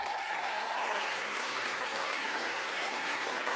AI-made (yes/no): yes